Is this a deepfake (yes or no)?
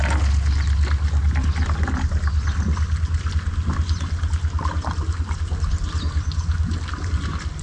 no